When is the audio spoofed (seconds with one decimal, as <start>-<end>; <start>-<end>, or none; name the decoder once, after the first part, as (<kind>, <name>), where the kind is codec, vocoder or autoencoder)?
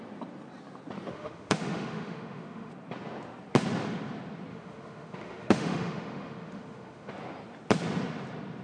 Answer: 1.1-2.7 (autoencoder, DAC-VAE); 4.5-7.1